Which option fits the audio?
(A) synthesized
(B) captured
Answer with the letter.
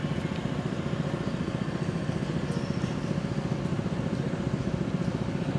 B